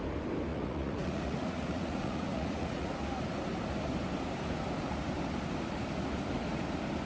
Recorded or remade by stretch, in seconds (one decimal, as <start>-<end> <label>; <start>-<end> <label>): 0.0-0.5 recorded; 0.5-2.9 remade; 2.9-7.1 recorded